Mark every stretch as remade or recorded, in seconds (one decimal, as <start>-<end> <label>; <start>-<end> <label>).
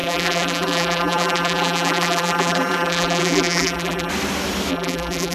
0.0-4.1 remade; 4.1-4.7 recorded; 4.7-5.3 remade